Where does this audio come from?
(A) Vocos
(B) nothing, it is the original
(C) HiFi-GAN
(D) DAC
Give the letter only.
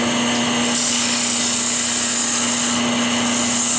B